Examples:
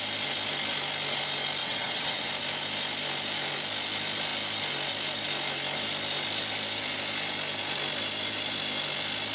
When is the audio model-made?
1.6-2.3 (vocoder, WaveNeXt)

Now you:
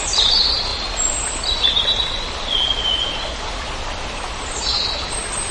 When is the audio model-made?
none

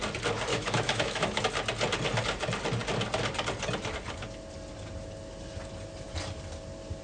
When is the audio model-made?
0.5-1.4 (autoencoder, DAC-VAE)